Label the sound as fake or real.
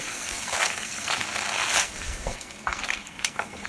fake